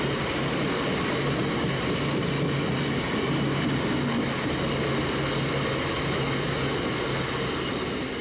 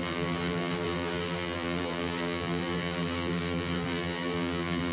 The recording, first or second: first